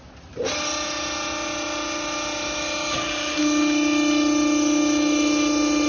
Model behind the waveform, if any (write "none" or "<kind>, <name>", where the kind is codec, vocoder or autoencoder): none